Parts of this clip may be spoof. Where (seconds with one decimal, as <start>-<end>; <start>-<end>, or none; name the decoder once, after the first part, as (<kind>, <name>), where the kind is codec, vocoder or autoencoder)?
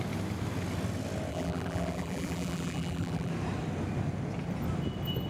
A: 1.3-3.3 (vocoder, BigVGAN v2)